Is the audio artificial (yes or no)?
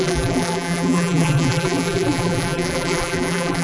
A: yes